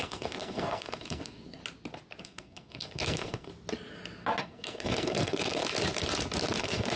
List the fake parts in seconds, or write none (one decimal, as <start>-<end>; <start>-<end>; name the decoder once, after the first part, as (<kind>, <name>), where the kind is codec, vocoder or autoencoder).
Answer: 0.0-1.6 (codec, SNAC); 2.2-3.5; 4.4-5.6; 6.6-7.0